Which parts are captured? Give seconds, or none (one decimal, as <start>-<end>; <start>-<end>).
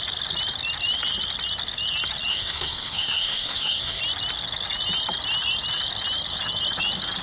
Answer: 0.0-2.3; 4.0-7.2